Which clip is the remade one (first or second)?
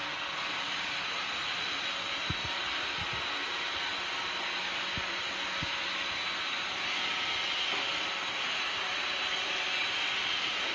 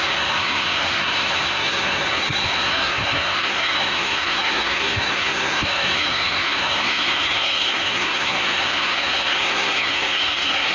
second